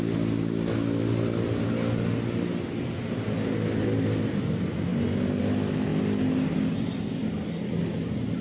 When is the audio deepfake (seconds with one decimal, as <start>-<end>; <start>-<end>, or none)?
none